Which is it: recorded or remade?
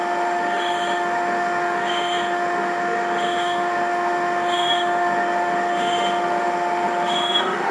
remade